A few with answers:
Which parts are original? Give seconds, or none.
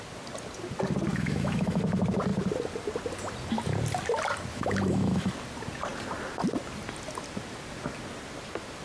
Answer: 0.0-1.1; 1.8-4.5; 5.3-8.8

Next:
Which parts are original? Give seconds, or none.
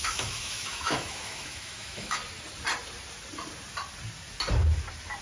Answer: 2.2-5.2